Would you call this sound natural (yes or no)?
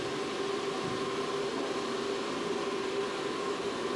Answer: yes